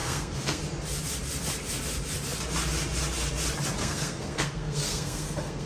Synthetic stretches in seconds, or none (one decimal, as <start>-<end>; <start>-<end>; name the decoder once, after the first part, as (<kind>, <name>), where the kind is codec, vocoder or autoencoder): 0.0-0.6 (codec, SNAC); 3.8-5.7